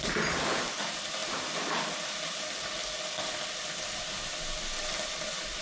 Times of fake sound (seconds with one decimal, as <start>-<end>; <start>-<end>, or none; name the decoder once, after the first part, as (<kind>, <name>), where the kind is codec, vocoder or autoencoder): none